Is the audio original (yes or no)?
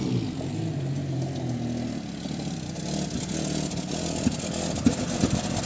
yes